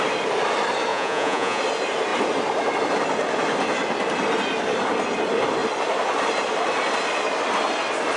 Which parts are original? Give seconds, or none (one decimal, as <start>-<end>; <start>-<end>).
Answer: 0.0-0.9; 1.6-8.2